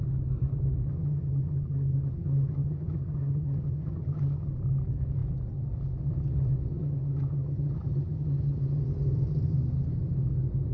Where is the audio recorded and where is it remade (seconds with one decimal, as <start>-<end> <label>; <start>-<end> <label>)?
0.0-0.9 recorded; 0.9-4.5 remade; 4.5-6.7 recorded; 6.7-8.8 remade; 8.8-10.7 recorded